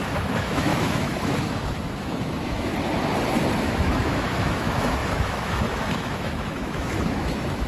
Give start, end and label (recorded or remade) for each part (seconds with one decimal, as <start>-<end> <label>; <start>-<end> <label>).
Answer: 0.0-2.7 remade; 2.7-3.6 recorded; 3.6-7.7 remade